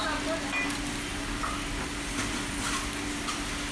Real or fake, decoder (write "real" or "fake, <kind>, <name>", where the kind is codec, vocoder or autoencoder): real